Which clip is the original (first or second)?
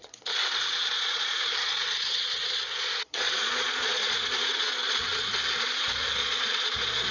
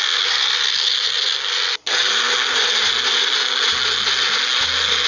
second